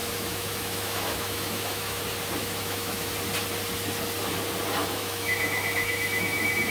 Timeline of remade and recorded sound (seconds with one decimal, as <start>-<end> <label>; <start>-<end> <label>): 0.0-2.0 remade; 2.0-2.4 recorded; 2.4-3.1 remade; 3.1-4.8 recorded; 4.8-6.7 remade